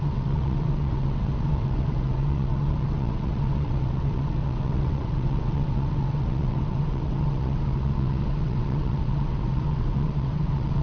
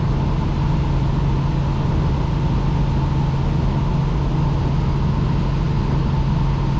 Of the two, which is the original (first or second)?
second